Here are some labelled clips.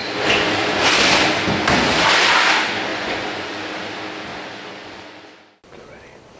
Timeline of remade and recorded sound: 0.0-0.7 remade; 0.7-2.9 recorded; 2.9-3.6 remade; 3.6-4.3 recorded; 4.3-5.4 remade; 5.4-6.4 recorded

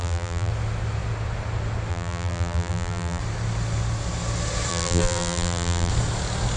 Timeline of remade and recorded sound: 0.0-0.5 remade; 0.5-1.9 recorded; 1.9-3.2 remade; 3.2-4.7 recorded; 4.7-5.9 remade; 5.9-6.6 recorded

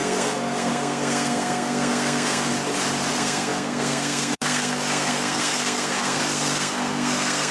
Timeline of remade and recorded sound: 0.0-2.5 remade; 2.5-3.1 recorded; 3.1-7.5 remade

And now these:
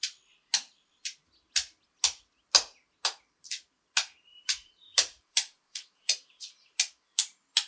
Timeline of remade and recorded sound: 0.0-4.3 recorded; 4.3-6.4 remade; 6.4-7.7 recorded

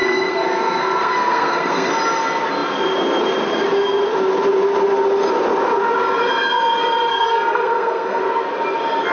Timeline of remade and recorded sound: 0.0-1.9 remade; 1.9-7.1 recorded; 7.1-8.2 remade; 8.2-9.1 recorded

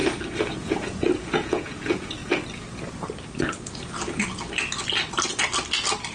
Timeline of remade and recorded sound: 0.0-0.5 recorded; 0.5-2.2 remade; 2.2-6.1 recorded

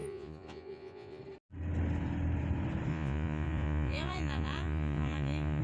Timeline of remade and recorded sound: 0.0-1.2 remade; 1.2-2.9 recorded; 2.9-5.6 remade

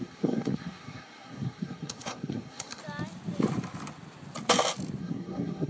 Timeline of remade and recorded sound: 0.0-2.8 remade; 2.8-5.0 recorded; 5.0-5.7 remade